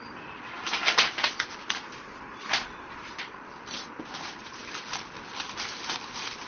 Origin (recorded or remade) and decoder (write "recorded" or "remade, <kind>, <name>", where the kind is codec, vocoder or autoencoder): remade, vocoder, BigVGAN v2